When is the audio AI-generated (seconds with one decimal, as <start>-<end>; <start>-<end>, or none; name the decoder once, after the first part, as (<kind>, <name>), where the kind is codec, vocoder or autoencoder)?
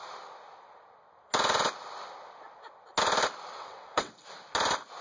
3.5-4.1 (vocoder, WaveNeXt)